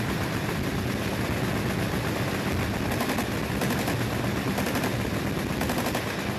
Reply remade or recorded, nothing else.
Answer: recorded